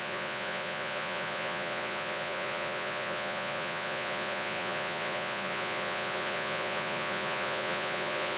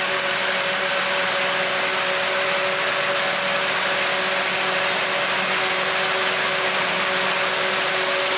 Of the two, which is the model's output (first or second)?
first